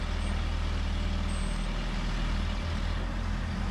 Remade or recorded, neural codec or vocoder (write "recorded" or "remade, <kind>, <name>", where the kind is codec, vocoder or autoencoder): recorded